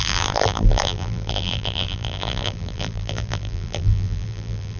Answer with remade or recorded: remade